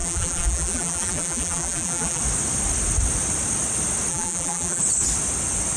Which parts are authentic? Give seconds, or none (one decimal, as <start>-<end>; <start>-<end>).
2.2-4.1; 4.8-5.8